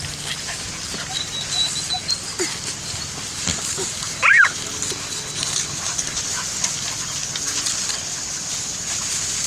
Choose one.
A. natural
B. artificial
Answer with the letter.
A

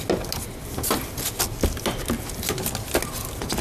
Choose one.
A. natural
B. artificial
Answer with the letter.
A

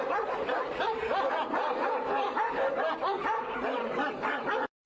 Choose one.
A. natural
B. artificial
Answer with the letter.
B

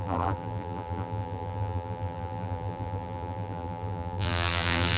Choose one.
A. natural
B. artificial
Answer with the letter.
B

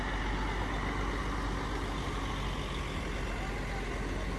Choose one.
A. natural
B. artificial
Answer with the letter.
A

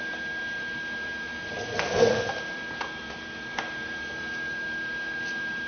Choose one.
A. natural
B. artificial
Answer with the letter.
B